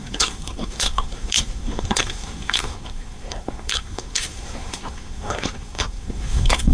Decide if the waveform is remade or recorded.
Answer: remade